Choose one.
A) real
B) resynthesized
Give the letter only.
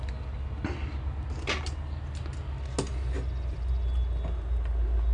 A